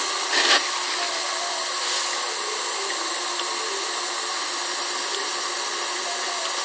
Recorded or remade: recorded